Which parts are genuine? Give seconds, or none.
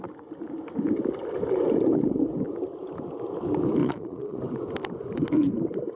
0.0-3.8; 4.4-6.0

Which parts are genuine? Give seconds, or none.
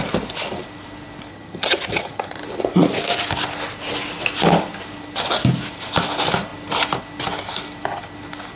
0.0-1.3; 2.4-8.6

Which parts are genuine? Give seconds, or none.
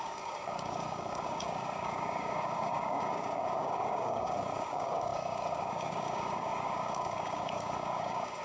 none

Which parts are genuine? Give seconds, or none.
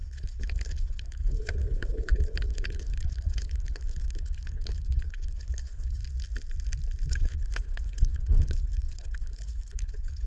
6.0-7.1